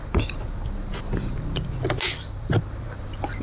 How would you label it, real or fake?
real